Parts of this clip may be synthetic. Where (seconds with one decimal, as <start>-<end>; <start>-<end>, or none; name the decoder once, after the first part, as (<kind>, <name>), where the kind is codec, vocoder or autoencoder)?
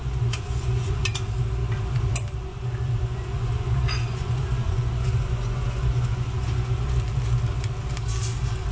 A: 0.0-1.0 (vocoder, Vocos); 2.5-7.0